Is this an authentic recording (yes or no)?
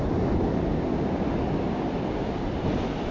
yes